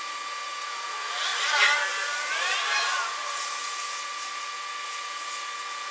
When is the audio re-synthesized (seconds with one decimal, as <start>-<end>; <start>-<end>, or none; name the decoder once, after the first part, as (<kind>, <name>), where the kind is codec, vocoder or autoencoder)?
none